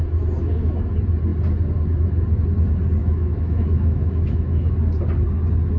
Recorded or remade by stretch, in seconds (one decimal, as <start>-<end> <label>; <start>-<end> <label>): 0.0-0.4 recorded; 0.4-0.9 remade; 0.9-3.0 recorded; 3.0-4.7 remade; 4.7-5.8 recorded